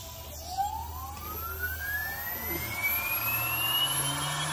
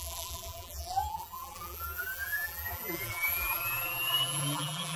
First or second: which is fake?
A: second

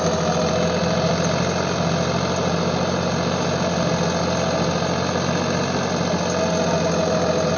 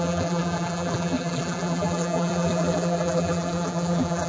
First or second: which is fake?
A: second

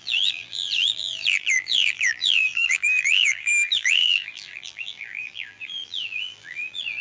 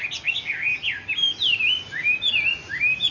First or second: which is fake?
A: first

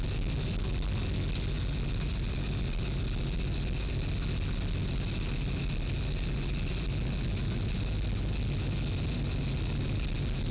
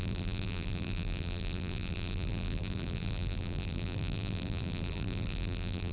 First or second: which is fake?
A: second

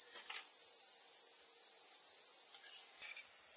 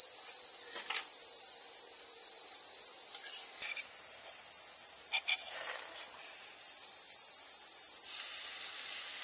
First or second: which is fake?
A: second